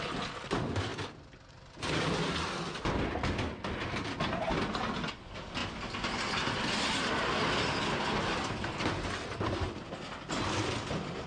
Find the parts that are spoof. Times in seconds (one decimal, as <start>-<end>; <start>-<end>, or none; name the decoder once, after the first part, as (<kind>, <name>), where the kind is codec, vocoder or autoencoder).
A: none